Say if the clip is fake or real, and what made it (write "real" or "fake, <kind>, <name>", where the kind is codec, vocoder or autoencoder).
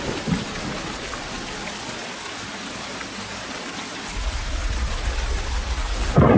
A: real